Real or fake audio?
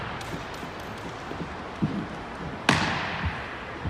real